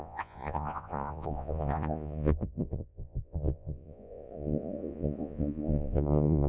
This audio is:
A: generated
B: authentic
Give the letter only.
A